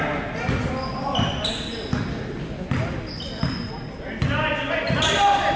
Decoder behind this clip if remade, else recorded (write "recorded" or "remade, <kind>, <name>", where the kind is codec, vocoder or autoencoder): recorded